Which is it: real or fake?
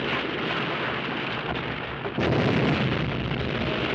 real